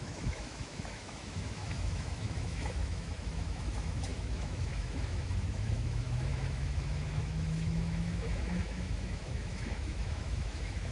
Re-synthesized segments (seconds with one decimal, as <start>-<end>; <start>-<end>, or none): 0.0-10.9